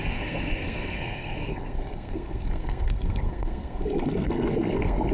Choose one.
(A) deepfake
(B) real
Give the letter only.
A